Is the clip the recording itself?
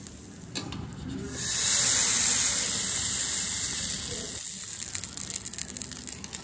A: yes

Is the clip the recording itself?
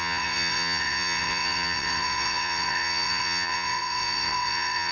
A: no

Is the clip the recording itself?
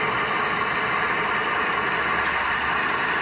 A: yes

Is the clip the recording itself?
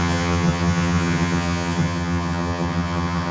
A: no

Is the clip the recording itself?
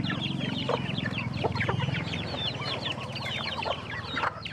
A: no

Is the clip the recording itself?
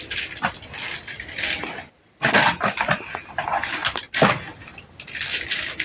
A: yes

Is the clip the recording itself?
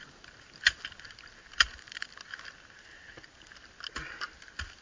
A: yes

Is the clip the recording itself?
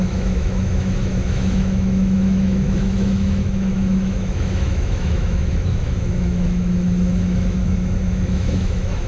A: no